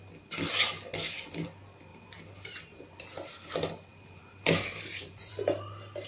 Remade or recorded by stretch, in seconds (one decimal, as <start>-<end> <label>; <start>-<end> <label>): 0.0-1.9 recorded; 1.9-2.8 remade; 2.8-3.9 recorded; 3.9-5.3 remade; 5.3-6.1 recorded